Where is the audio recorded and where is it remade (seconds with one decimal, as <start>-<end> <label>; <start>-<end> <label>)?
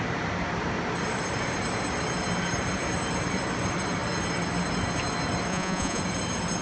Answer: 0.0-5.5 recorded; 5.5-6.0 remade; 6.0-6.6 recorded